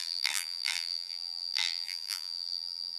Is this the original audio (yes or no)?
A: no